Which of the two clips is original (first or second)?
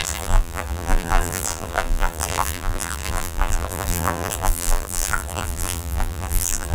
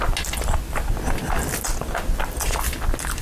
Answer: second